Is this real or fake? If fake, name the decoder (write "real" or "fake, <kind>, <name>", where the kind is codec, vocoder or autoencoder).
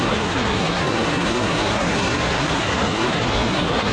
fake, codec, SNAC